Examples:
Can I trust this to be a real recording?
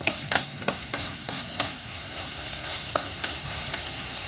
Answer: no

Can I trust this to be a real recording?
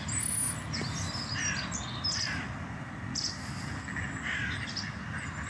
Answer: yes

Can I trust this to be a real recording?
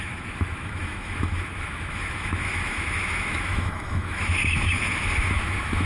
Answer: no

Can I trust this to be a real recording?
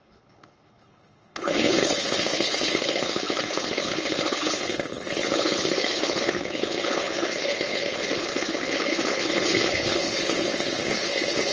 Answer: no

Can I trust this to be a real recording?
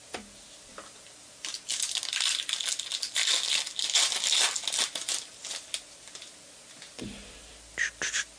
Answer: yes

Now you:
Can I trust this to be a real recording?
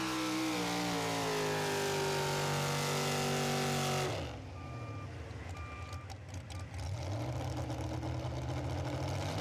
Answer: yes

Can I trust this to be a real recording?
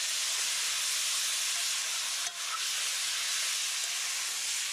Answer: yes